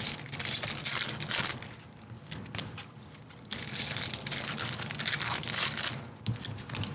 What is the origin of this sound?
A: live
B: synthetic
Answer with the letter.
A